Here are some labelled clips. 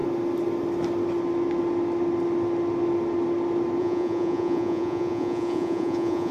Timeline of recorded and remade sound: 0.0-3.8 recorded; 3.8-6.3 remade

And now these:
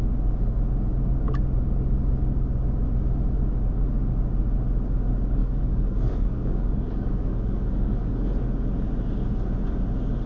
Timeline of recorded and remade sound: 0.0-5.4 recorded; 5.4-8.3 remade; 8.3-10.3 recorded